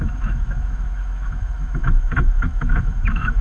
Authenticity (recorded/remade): remade